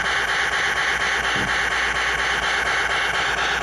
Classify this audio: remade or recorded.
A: recorded